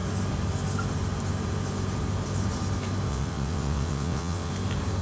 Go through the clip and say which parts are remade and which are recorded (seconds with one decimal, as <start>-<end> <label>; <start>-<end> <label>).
0.0-3.1 recorded; 3.1-4.5 remade; 4.5-5.0 recorded